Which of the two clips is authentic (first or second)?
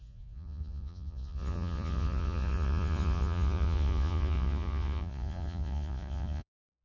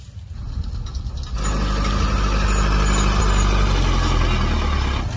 second